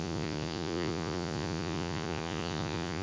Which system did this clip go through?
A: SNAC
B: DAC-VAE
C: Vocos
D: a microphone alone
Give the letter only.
C